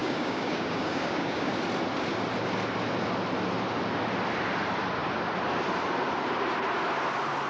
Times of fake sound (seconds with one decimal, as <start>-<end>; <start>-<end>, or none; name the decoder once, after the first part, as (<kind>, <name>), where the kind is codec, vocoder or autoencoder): 0.0-1.5 (codec, DAC)